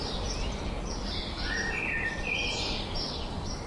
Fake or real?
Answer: fake